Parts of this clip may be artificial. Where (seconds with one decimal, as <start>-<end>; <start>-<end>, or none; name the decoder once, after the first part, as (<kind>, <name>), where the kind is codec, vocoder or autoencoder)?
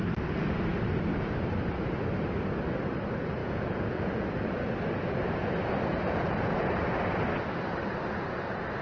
3.4-4.3 (vocoder, Vocos); 5.9-6.7